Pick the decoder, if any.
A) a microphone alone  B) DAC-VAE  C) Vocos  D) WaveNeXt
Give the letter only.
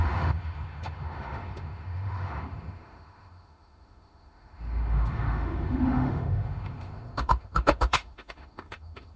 B